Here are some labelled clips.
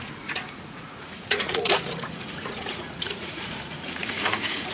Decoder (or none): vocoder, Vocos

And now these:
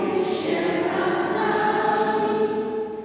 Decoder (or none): none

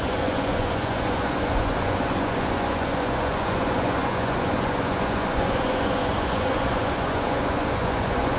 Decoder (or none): vocoder, Vocos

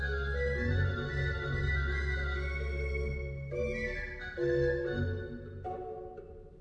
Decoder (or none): none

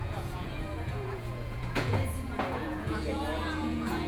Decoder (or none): vocoder, Vocos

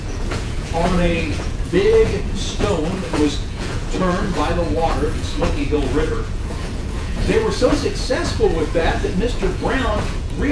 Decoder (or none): vocoder, Vocos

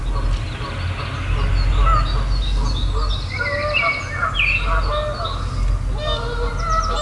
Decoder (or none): none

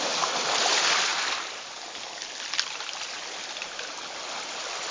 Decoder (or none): none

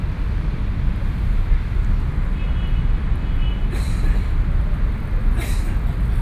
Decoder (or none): none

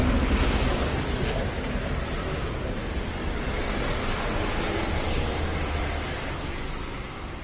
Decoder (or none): none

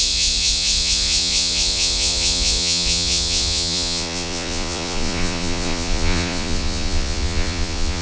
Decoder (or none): vocoder, Vocos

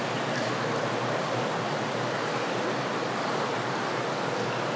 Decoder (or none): none